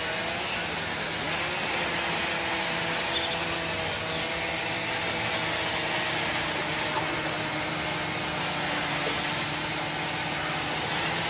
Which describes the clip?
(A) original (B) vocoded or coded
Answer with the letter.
A